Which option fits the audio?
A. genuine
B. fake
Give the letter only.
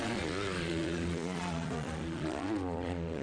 B